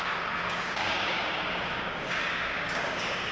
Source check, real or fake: fake